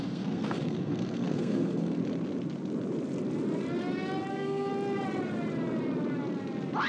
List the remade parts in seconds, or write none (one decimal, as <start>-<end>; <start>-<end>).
0.0-2.0; 4.3-4.7